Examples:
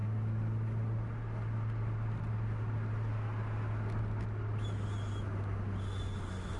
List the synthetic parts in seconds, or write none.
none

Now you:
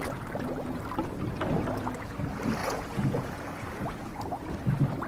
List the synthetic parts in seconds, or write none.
2.6-4.5 (vocoder, Vocos)

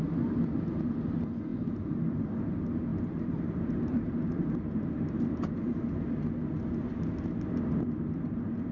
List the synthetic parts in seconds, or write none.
1.5-2.4 (vocoder, BigVGAN v2); 2.9-5.8